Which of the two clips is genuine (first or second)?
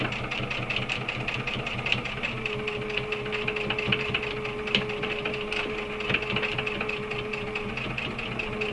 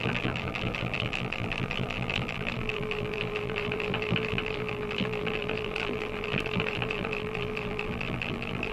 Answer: first